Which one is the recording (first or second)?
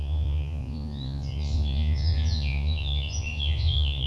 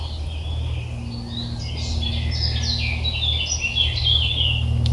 second